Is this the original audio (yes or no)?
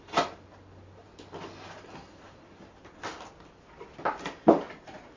yes